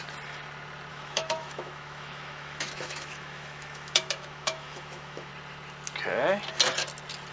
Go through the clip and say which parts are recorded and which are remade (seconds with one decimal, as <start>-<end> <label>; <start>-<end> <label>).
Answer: 0.0-0.9 recorded; 0.9-5.3 remade; 5.3-7.3 recorded